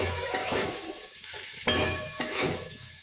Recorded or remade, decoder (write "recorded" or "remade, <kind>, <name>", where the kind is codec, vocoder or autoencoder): remade, autoencoder, DAC-VAE